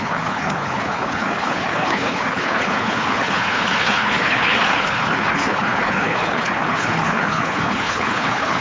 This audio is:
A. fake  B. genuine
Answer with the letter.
A